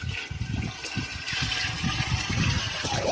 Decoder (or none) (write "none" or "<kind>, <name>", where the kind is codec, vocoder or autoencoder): none